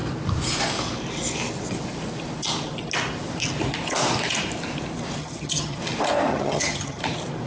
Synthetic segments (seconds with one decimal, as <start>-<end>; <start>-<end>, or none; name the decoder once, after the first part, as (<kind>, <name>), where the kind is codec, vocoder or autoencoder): 5.2-5.8 (vocoder, HiFi-GAN); 6.3-7.0